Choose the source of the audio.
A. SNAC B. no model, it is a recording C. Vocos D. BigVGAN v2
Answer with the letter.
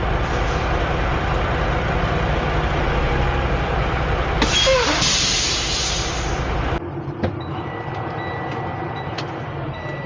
B